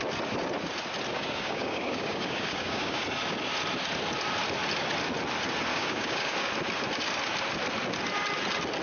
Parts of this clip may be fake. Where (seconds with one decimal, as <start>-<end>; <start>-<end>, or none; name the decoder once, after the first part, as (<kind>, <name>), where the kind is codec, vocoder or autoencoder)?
1.1-3.0 (codec, DAC); 5.7-6.5